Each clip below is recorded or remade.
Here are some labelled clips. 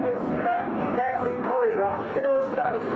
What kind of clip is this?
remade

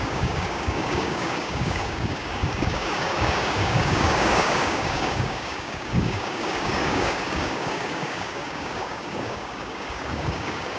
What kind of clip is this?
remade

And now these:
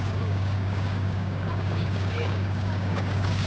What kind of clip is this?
remade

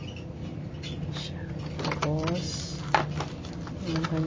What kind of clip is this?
recorded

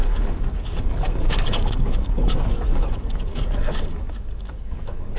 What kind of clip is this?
remade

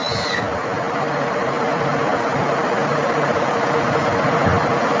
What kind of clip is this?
recorded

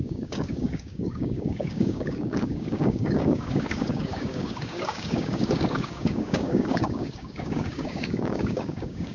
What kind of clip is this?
remade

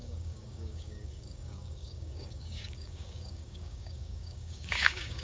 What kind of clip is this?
remade